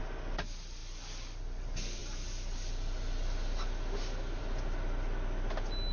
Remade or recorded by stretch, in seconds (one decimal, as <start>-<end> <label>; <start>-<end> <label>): 0.0-5.9 recorded

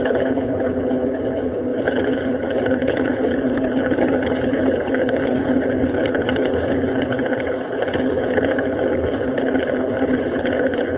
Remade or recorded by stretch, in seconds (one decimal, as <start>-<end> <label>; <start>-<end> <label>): 0.0-11.0 remade

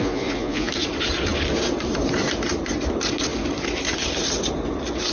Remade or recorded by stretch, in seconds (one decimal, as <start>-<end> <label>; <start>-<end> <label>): 0.0-0.7 remade; 0.7-5.1 recorded